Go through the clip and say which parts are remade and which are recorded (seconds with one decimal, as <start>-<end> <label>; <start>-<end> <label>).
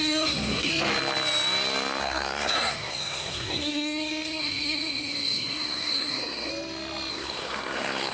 0.0-0.7 remade; 0.7-2.0 recorded; 2.0-6.5 remade; 6.5-7.1 recorded; 7.1-8.1 remade